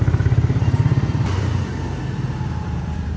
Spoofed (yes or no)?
yes